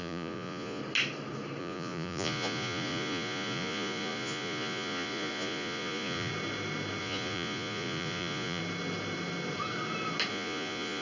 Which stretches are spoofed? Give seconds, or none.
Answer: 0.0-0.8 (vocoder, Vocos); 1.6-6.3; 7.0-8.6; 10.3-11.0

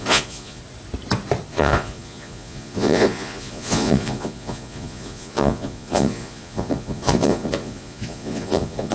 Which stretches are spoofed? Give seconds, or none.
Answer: 0.0-0.6 (vocoder, Vocos); 1.5-8.9

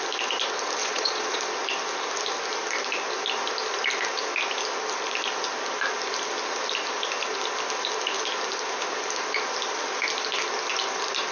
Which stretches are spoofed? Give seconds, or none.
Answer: 0.8-1.4 (vocoder, Vocos)

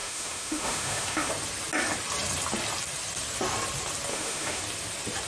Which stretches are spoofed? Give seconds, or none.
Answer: 0.0-1.3 (autoencoder, DAC-VAE); 4.1-4.6